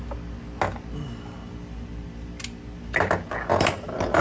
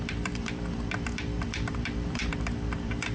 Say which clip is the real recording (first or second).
first